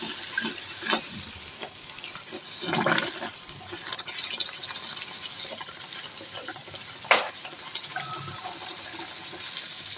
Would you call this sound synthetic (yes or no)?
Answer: no